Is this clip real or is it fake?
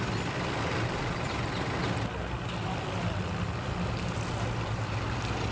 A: real